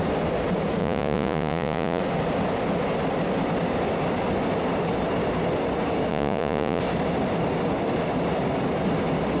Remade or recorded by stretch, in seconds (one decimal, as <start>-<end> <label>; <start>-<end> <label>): 0.0-0.8 recorded; 0.8-2.0 remade; 2.0-6.1 recorded; 6.1-6.8 remade; 6.8-9.4 recorded